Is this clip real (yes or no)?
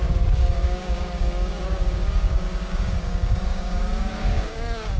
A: no